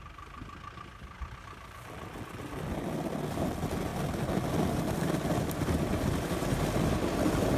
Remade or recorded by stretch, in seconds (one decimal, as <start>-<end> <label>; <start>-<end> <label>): 0.0-7.6 recorded